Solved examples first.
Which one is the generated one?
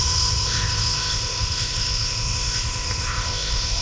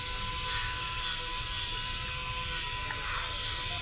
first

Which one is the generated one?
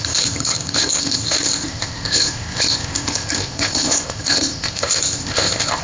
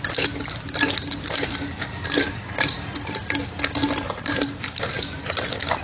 first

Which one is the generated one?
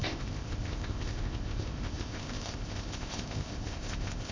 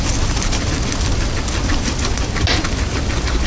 first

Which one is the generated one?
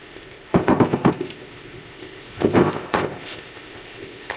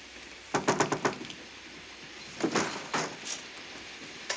first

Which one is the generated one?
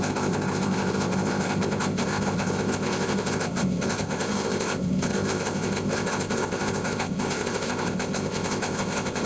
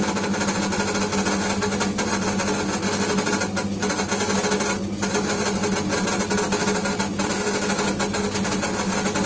first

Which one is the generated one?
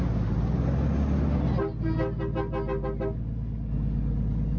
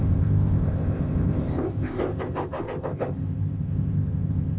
second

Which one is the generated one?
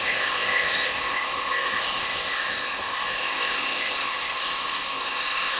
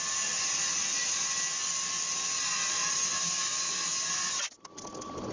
first